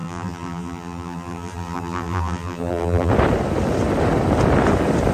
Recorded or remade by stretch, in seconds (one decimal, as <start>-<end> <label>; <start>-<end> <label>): 0.0-3.1 remade; 3.1-5.1 recorded